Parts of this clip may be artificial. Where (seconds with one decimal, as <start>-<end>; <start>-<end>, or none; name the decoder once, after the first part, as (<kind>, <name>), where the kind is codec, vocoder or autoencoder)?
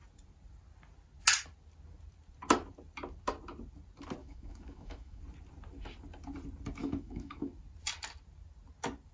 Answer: 4.2-5.2 (autoencoder, DAC-VAE); 6.8-7.5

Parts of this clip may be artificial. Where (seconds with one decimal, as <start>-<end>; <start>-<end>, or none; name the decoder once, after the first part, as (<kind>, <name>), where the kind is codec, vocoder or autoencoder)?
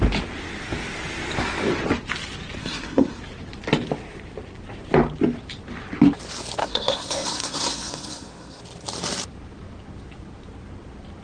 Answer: 2.6-3.2 (codec, SNAC); 6.6-8.6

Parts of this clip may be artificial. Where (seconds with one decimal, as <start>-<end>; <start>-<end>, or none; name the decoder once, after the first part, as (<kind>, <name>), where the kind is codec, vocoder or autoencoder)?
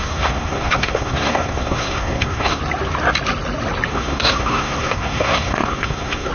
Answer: 0.0-2.6 (codec, SNAC); 3.9-6.3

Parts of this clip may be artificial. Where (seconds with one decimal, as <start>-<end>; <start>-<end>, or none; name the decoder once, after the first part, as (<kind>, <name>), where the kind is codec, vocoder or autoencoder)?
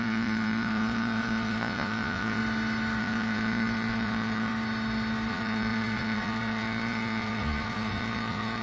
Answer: 0.0-2.4 (vocoder, Vocos); 3.0-4.5; 5.3-8.6